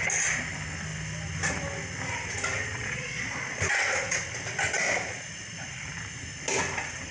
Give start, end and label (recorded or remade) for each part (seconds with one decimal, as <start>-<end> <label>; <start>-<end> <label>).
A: 0.0-2.6 recorded; 2.6-3.6 remade; 3.6-7.1 recorded